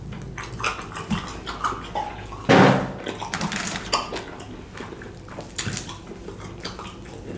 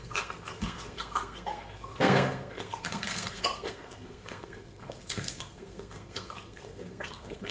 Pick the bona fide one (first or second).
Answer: first